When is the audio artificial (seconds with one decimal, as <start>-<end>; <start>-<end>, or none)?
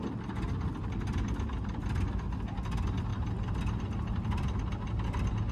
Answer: 3.1-5.5